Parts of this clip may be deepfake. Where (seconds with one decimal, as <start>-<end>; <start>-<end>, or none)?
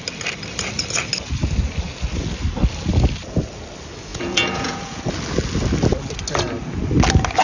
4.1-5.0